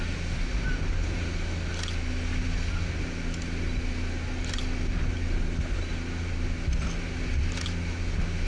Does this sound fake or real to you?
real